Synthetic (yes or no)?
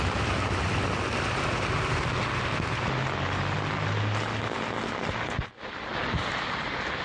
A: no